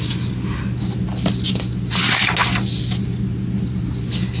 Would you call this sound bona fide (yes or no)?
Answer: yes